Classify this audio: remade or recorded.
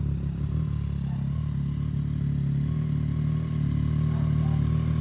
recorded